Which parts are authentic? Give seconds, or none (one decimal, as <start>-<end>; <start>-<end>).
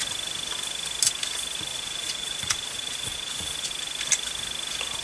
0.0-1.7; 3.7-5.0